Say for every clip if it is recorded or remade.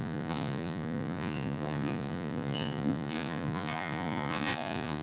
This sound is remade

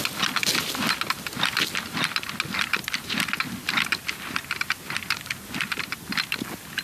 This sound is recorded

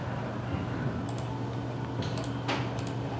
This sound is recorded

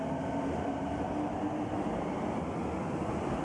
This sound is recorded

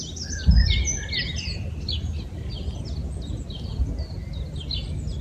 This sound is recorded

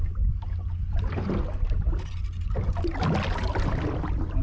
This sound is recorded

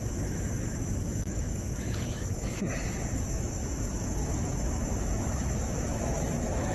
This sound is remade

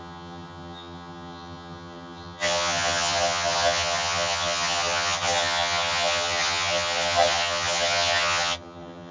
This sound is remade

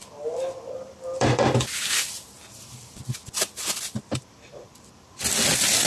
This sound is remade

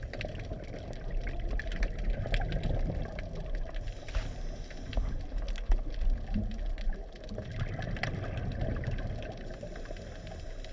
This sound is recorded